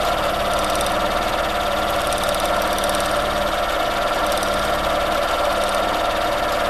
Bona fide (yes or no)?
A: yes